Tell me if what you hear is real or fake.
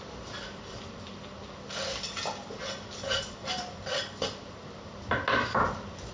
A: real